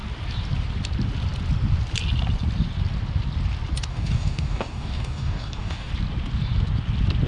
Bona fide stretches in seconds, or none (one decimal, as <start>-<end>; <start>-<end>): 0.0-3.9; 5.9-7.3

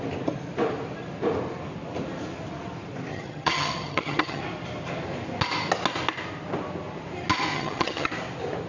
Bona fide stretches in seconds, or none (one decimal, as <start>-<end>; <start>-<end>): 0.0-3.1; 4.4-7.5; 8.1-8.7